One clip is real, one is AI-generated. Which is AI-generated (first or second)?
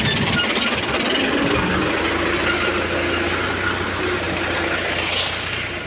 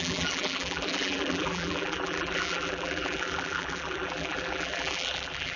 second